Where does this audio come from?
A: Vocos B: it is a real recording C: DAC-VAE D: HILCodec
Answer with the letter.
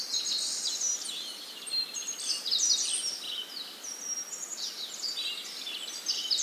B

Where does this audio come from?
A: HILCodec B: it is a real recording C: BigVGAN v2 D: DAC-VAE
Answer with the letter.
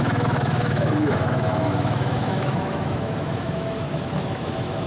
D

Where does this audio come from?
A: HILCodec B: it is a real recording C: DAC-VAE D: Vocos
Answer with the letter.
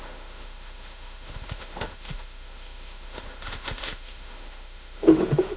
C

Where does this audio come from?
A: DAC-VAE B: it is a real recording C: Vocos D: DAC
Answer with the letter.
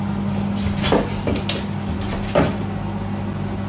B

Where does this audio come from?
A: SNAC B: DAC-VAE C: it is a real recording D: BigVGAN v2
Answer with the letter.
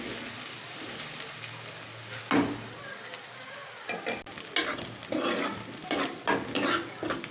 C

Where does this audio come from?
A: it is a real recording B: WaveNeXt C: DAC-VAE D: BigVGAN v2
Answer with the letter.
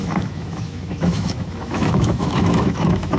C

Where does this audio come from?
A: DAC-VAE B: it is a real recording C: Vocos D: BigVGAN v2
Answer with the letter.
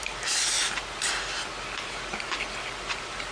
B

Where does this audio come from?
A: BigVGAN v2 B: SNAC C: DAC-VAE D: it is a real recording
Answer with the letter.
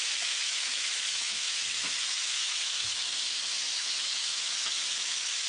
C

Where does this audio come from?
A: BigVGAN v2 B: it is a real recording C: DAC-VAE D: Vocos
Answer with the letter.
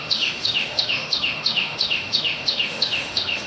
C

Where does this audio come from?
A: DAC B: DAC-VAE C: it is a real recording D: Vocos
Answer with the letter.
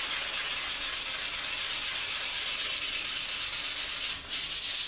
C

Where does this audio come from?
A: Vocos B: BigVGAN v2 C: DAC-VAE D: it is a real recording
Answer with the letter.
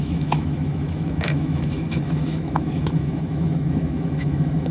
C